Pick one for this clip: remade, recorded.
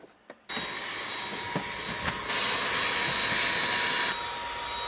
recorded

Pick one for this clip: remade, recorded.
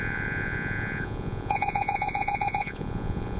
remade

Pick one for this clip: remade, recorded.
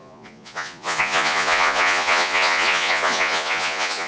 remade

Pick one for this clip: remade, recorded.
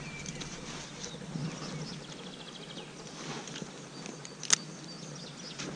recorded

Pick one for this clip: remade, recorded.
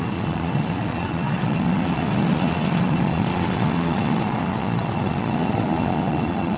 remade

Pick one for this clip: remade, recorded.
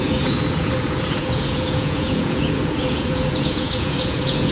remade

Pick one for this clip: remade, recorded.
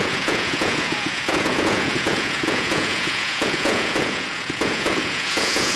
remade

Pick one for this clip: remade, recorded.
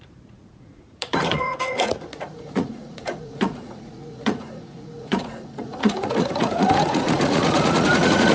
remade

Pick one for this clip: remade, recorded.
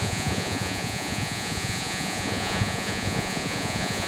remade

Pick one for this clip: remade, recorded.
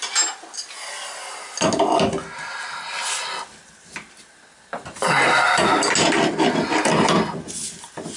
recorded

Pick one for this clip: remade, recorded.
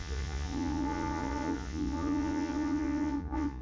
remade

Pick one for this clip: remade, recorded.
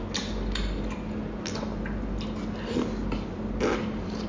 recorded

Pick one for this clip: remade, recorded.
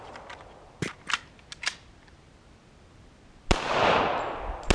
recorded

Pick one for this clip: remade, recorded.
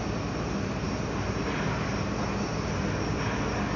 recorded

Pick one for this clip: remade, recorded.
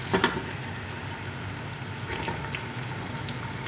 recorded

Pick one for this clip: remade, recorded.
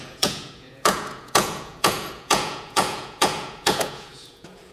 remade